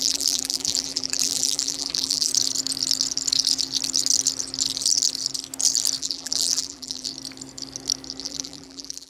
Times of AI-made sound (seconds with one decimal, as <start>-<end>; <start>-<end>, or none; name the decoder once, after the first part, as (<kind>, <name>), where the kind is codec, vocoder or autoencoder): 0.0-2.3 (vocoder, BigVGAN v2); 6.0-7.1; 8.2-9.1